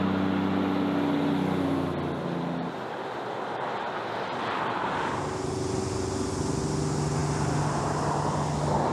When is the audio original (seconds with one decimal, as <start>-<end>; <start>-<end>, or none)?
0.0-8.9